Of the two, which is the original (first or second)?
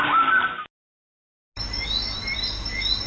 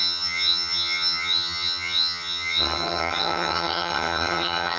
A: first